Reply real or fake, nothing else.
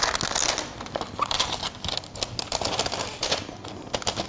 real